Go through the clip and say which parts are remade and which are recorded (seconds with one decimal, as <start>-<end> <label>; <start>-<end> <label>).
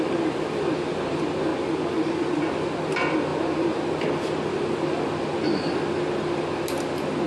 0.0-7.3 recorded